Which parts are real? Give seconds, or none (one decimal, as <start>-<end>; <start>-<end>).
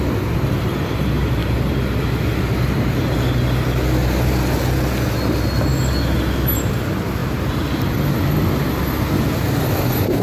0.0-10.2